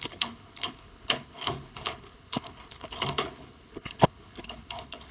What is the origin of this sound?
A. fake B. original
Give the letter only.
A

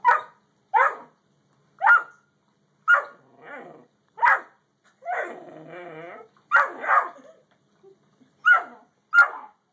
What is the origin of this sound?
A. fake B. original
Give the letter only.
B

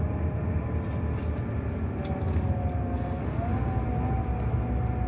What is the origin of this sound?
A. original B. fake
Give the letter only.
A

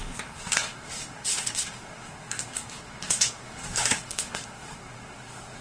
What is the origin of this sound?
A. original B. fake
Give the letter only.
B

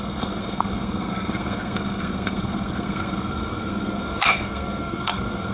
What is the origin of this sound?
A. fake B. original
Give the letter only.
A